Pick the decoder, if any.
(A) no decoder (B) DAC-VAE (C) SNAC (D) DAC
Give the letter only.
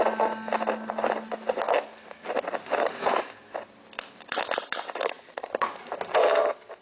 A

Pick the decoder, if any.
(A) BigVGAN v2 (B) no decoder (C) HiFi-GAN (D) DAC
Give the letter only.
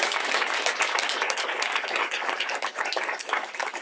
D